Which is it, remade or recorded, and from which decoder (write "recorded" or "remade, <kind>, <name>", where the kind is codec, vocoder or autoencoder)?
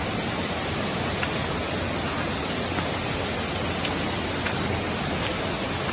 recorded